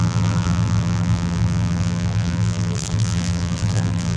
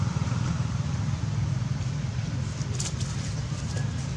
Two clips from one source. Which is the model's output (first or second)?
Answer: first